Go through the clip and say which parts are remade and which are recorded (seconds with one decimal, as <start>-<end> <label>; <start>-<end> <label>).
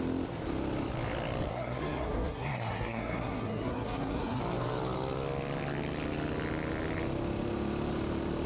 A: 0.0-1.5 recorded; 1.5-4.4 remade; 4.4-8.5 recorded